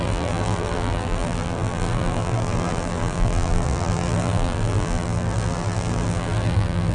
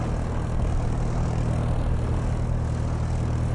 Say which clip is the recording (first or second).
second